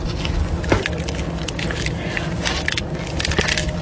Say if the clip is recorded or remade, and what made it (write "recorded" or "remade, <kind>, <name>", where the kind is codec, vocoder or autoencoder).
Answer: recorded